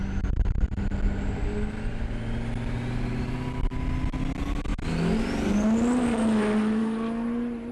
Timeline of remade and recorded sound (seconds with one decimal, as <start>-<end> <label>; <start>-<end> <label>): 0.0-7.7 recorded